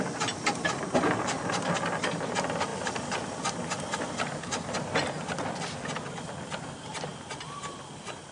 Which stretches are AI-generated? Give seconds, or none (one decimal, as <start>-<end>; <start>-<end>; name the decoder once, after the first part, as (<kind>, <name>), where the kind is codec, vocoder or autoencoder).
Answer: none